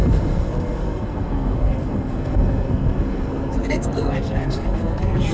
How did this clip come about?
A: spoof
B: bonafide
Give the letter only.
A